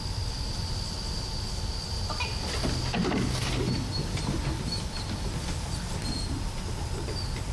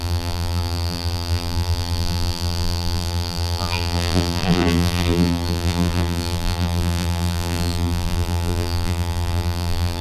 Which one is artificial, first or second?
second